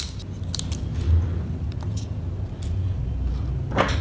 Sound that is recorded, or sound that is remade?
recorded